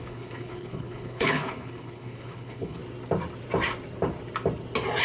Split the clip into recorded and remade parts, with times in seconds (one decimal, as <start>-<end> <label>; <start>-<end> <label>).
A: 0.0-2.8 remade; 2.8-5.0 recorded